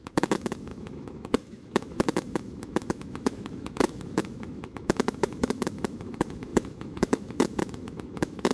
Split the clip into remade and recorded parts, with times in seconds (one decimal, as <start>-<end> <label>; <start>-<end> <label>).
0.0-8.5 remade